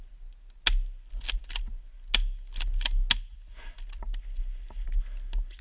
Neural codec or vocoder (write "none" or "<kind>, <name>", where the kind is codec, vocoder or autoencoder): none